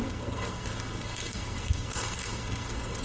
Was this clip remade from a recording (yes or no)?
yes